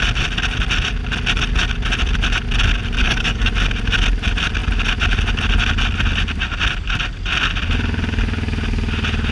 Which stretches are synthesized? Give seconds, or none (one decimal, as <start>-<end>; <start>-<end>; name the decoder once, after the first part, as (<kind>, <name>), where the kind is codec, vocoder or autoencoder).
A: 3.0-3.5 (codec, DAC)

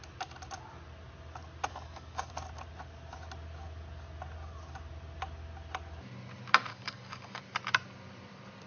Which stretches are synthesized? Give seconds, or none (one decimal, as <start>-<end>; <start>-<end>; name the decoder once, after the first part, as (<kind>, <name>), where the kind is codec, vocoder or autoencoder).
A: 1.7-2.3 (codec, DAC); 6.7-7.4